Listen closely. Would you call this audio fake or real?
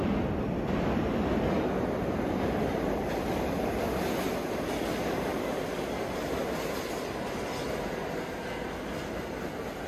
real